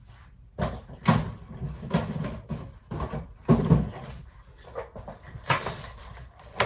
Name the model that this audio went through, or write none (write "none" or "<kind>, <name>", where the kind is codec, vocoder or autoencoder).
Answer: none